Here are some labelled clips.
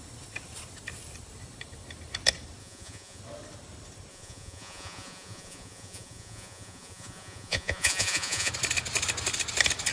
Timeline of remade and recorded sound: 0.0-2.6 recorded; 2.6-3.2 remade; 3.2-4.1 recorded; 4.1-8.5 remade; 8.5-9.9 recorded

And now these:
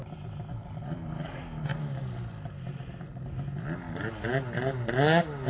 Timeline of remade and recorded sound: 0.0-5.5 recorded

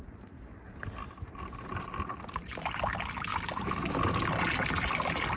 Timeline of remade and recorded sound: 0.0-5.4 recorded

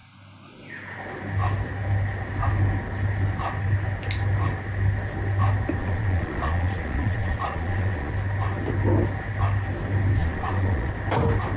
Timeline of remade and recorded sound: 0.0-5.8 recorded; 5.8-8.1 remade; 8.1-10.2 recorded; 10.2-10.9 remade; 10.9-11.6 recorded

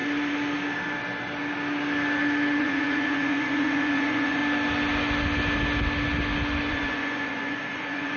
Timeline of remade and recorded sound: 0.0-2.6 recorded; 2.6-4.4 remade; 4.4-6.7 recorded; 6.7-8.2 remade